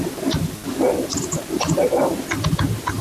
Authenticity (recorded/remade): recorded